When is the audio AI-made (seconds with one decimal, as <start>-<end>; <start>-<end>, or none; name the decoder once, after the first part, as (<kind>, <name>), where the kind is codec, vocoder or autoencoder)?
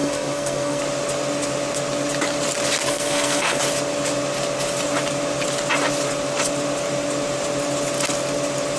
0.0-0.8 (codec, SNAC); 2.9-3.6